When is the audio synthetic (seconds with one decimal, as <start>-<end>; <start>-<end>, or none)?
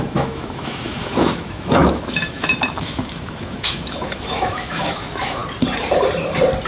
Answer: 0.0-5.4